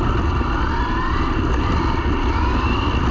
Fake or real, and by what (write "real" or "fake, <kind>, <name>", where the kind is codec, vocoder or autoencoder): real